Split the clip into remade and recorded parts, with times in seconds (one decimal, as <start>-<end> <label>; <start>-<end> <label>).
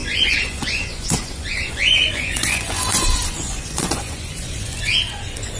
0.0-5.6 remade